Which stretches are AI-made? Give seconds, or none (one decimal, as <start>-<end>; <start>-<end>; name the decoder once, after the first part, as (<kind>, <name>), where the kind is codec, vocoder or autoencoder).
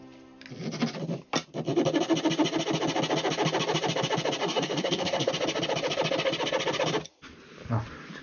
4.4-5.3 (codec, SNAC)